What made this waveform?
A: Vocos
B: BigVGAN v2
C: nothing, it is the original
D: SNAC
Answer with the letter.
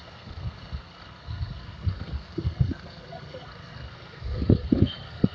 D